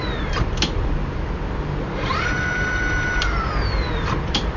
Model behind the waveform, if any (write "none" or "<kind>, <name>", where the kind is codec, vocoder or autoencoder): vocoder, BigVGAN v2